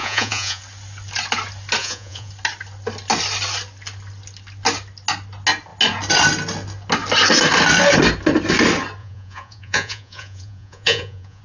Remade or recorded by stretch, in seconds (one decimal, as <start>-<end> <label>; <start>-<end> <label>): 0.0-0.6 remade; 0.6-1.8 recorded; 1.8-2.3 remade; 2.3-9.0 recorded; 9.0-11.4 remade